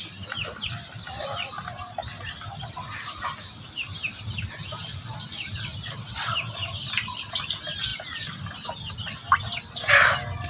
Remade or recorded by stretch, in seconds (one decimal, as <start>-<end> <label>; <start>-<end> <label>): 0.0-10.5 recorded